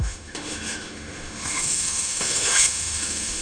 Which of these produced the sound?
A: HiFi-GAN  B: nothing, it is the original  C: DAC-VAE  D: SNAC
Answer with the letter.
C